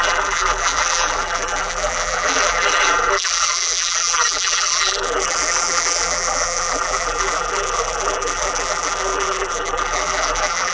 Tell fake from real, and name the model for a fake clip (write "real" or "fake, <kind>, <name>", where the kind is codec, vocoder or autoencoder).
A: fake, vocoder, BigVGAN v2